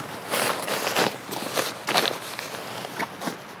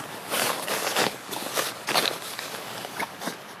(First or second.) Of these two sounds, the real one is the first